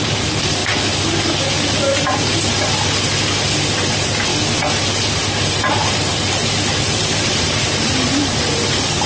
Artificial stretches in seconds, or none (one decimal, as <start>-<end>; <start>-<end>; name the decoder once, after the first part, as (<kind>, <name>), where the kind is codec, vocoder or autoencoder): 0.0-0.6 (vocoder, BigVGAN v2); 3.7-4.3; 5.2-6.4; 7.3-9.1